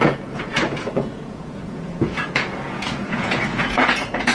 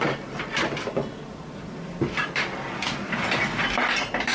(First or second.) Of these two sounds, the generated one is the first